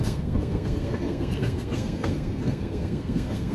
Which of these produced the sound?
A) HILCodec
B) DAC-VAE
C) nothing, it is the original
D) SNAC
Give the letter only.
D